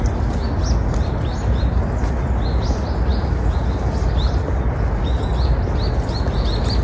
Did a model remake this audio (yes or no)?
no